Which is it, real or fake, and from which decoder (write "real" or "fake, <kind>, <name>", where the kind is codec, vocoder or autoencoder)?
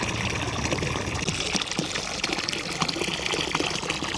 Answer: real